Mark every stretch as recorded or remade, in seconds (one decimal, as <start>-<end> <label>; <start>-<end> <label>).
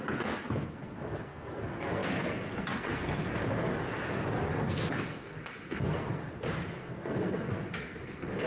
0.0-3.4 remade; 3.4-4.7 recorded; 4.7-6.2 remade; 6.2-6.7 recorded; 6.7-8.5 remade